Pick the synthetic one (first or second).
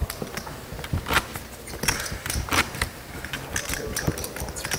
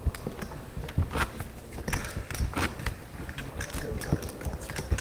second